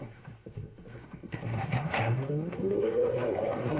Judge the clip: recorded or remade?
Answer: remade